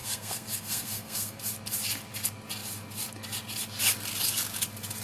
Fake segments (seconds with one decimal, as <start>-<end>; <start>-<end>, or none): 0.0-1.4